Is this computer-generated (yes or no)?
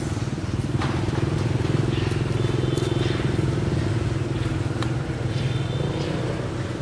no